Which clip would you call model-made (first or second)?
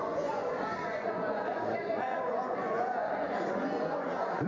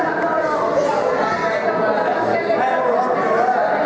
first